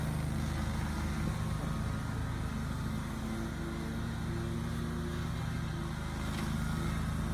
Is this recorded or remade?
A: recorded